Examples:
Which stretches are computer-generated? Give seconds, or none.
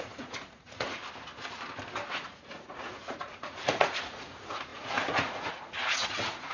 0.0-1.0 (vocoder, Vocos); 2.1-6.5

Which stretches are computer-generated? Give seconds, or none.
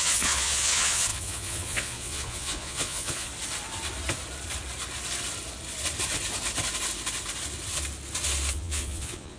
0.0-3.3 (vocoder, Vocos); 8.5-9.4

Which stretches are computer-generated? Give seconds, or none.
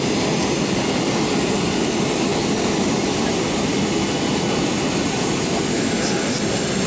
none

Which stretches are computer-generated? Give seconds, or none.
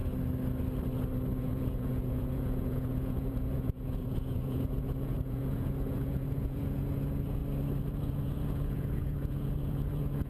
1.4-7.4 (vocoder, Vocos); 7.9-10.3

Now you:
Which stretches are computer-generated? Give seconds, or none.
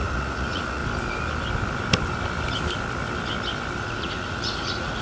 0.0-0.8 (vocoder, Vocos); 3.8-5.0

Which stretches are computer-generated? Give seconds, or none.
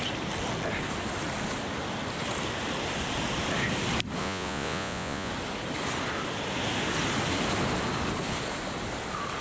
4.2-5.3 (vocoder, Vocos)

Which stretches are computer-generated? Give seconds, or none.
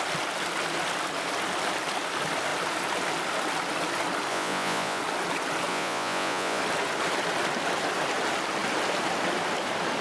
4.3-5.0 (vocoder, Vocos); 5.7-6.6